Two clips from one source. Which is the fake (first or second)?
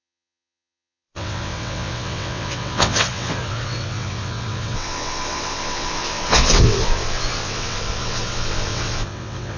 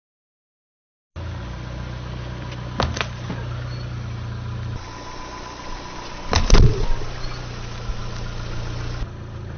first